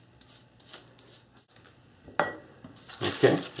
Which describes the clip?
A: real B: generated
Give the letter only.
A